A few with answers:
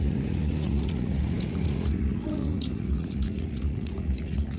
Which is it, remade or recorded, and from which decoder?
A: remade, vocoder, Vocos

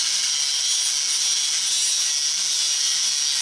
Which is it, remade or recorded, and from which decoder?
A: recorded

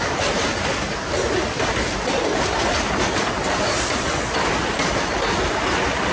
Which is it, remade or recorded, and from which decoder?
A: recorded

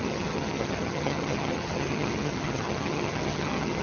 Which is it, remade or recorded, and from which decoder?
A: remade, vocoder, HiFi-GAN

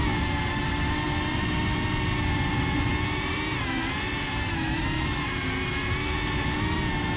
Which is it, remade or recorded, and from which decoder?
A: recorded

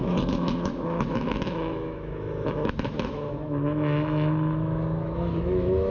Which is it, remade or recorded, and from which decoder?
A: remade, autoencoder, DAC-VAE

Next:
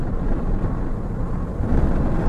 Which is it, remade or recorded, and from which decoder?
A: recorded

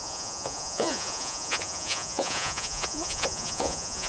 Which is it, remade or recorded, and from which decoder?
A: remade, vocoder, Vocos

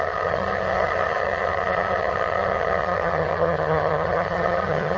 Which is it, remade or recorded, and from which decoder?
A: remade, vocoder, HiFi-GAN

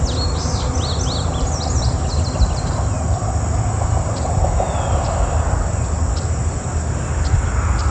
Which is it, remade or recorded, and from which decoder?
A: recorded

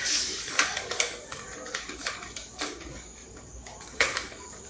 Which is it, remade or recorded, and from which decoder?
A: remade, codec, DAC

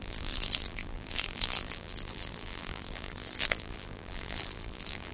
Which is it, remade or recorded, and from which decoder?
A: remade, vocoder, BigVGAN v2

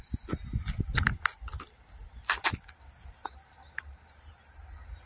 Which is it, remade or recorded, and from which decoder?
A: recorded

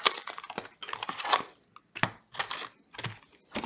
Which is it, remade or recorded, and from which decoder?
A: recorded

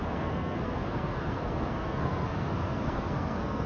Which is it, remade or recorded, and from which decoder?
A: remade, codec, SNAC